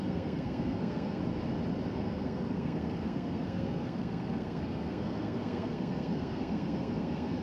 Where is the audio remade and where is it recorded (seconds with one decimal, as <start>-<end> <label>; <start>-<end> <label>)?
0.0-1.2 remade; 1.2-1.9 recorded; 1.9-7.4 remade